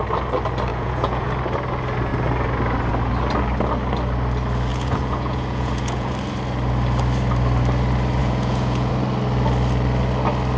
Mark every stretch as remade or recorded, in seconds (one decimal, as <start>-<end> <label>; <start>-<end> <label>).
0.0-0.7 recorded; 0.7-1.3 remade; 1.3-4.7 recorded; 4.7-6.1 remade; 6.1-8.2 recorded; 8.2-8.9 remade; 8.9-10.6 recorded